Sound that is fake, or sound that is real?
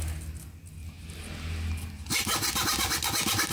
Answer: real